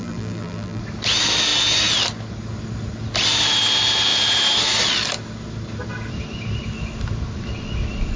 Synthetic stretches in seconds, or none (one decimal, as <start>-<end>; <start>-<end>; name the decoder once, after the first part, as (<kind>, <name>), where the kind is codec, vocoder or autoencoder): 0.0-0.8 (vocoder, BigVGAN v2)